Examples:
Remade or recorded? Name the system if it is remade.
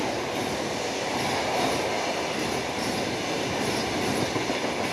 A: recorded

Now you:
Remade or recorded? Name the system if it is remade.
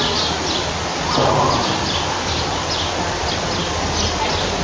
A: recorded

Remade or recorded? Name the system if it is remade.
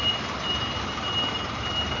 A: recorded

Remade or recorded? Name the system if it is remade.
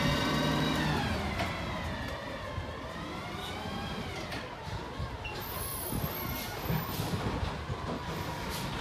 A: recorded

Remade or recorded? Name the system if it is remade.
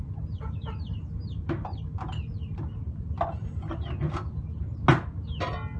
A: recorded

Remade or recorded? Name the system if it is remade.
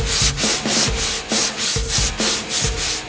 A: recorded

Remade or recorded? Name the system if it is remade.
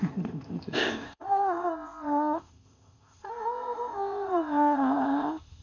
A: remade, codec, ZipCodec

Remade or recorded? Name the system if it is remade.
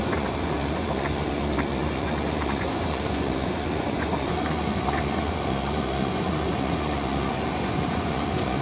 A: remade, vocoder, Vocos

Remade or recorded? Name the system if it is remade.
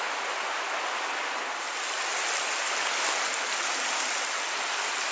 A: recorded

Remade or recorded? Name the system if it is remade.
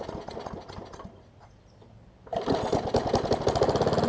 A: recorded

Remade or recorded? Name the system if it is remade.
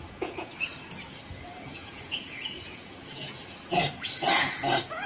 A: remade, vocoder, Vocos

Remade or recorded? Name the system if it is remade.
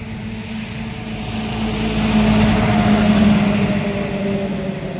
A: recorded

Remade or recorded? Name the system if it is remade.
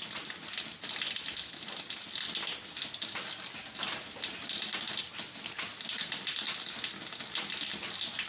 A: recorded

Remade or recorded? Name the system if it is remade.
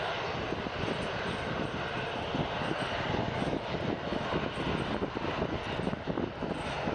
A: recorded